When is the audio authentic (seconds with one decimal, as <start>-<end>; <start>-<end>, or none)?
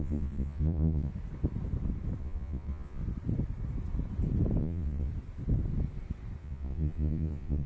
1.1-2.2; 3.0-4.6; 5.1-6.4